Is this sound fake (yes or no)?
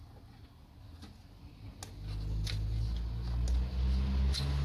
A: no